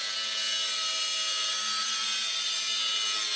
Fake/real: real